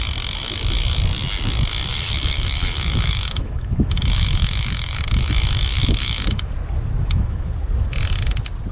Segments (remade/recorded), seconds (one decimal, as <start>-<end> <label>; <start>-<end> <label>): 0.0-1.9 recorded; 1.9-5.3 remade; 5.3-5.7 recorded; 5.7-6.5 remade; 6.5-7.0 recorded; 7.0-7.5 remade; 7.5-8.7 recorded